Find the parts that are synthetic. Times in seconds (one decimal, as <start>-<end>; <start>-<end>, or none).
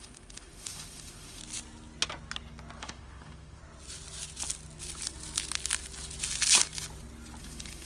0.0-1.4; 2.8-3.6; 7.4-7.9